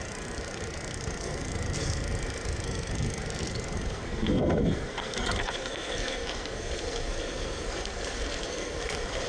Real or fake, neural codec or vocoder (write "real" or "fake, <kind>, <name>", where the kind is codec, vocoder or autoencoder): fake, codec, SNAC